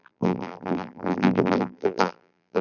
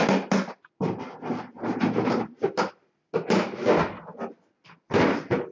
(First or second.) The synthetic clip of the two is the first